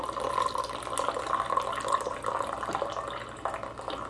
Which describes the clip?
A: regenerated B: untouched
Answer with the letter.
B